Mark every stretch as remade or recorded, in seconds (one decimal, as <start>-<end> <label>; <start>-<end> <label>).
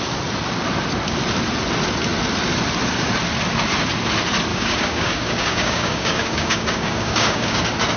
0.0-4.5 recorded; 4.5-7.6 remade; 7.6-8.0 recorded